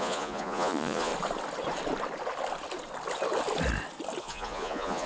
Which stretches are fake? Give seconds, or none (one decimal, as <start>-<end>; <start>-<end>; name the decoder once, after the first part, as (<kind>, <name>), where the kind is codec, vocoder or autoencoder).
0.0-1.1 (vocoder, Vocos); 4.2-5.1